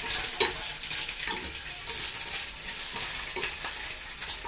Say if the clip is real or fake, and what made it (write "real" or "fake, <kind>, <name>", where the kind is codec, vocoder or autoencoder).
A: real